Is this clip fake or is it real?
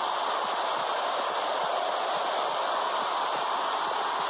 real